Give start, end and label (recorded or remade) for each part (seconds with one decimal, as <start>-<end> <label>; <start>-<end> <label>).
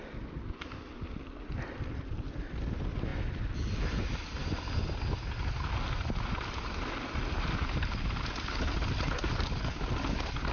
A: 0.0-10.5 recorded